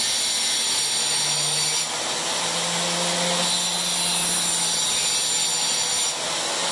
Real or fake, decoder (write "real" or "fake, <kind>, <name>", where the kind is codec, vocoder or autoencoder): real